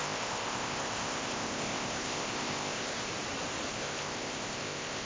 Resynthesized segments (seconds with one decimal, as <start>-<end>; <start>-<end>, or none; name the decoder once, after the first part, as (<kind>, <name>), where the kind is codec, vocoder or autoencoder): 0.0-3.1 (codec, ZipCodec); 3.7-5.1

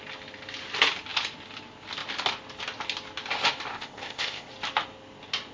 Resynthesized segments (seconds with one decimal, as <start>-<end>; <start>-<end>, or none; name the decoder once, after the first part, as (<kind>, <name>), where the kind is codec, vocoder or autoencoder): 3.7-4.5 (codec, ZipCodec)

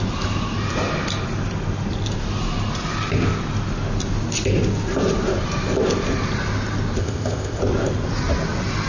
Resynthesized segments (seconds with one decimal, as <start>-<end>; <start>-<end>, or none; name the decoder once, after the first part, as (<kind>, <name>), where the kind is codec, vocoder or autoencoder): 7.0-7.6 (codec, ZipCodec)

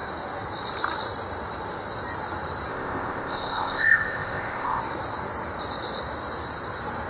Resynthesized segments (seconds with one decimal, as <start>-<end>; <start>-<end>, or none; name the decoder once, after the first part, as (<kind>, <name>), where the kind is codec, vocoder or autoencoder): 2.7-4.8 (codec, ZipCodec)